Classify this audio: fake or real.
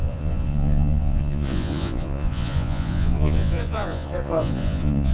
fake